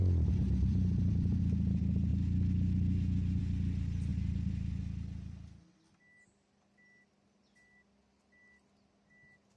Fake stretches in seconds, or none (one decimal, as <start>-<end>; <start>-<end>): 0.0-1.4